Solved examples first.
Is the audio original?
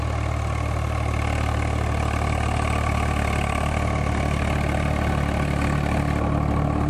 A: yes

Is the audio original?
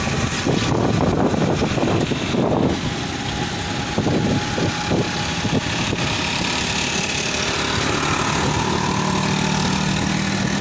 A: yes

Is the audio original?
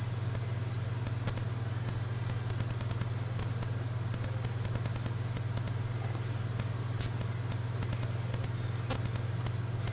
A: yes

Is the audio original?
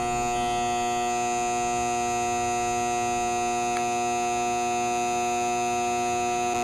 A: yes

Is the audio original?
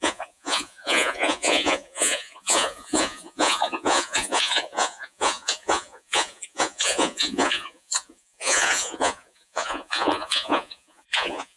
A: no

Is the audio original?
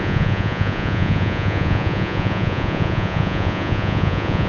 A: no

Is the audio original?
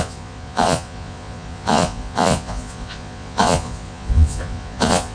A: no